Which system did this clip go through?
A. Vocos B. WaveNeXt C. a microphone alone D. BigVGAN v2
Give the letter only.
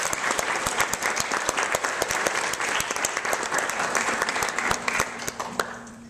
D